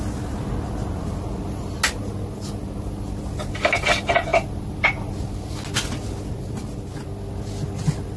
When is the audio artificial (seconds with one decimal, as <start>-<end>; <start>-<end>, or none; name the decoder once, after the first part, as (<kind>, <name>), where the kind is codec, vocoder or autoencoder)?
none